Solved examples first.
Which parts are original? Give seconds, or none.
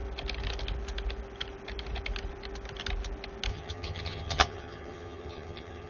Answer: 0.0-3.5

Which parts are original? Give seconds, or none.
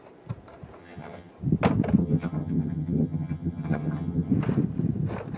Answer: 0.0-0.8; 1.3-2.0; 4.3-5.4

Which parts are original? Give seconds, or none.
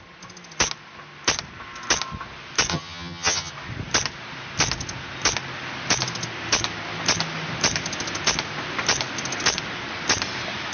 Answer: 0.0-2.7; 3.5-10.7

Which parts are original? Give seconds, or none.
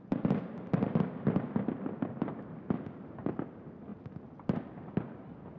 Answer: 0.0-5.6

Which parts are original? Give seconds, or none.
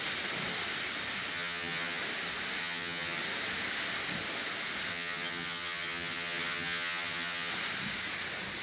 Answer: 0.0-1.3; 2.0-2.6; 3.2-4.9; 7.5-8.6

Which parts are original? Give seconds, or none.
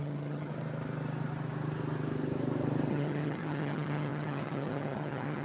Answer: 0.5-2.9